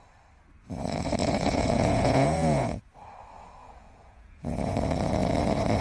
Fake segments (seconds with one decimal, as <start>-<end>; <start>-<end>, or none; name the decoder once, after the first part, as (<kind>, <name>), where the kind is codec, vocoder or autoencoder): 1.2-2.8 (vocoder, Vocos); 3.6-4.7